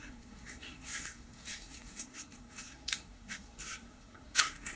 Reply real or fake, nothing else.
fake